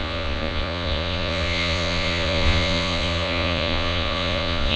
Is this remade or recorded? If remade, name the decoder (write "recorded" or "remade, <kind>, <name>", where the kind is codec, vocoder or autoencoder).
remade, vocoder, Vocos